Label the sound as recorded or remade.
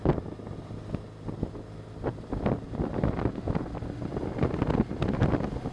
recorded